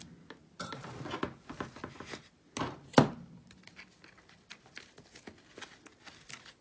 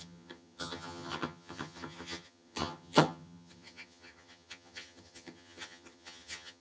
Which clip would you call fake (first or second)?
second